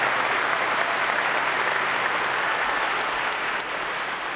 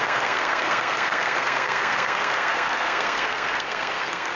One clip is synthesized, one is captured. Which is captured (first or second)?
first